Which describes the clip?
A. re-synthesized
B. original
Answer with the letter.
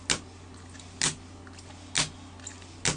B